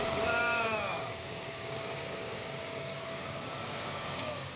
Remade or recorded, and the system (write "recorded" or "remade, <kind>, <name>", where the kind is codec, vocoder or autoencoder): remade, codec, DAC